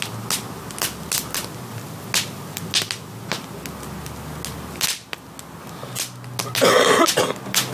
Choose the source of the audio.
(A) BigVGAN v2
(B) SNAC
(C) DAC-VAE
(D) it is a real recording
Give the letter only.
D